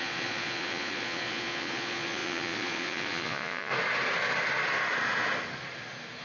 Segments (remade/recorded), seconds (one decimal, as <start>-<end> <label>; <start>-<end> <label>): 0.0-3.7 remade; 3.7-6.2 recorded